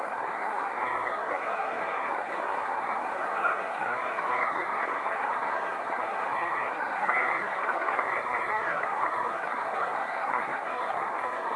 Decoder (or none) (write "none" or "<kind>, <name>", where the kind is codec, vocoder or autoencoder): codec, SNAC